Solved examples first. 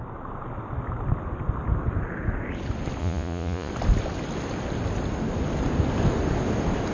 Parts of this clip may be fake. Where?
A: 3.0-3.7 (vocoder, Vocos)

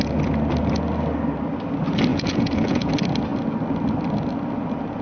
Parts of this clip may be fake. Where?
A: 2.1-2.9 (vocoder, Vocos)

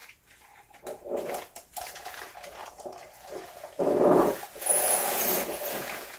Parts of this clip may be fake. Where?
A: 0.0-6.2 (vocoder, Vocos)